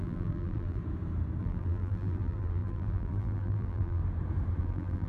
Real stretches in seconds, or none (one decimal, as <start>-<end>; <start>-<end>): 0.8-1.4; 4.0-4.6